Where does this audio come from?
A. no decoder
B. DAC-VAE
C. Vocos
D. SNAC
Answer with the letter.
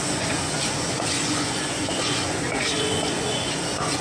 C